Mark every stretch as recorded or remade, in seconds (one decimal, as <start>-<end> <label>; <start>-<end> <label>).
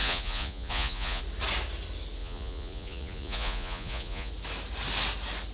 0.0-1.2 remade; 1.2-2.2 recorded; 2.2-4.3 remade; 4.3-5.5 recorded